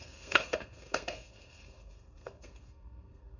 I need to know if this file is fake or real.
fake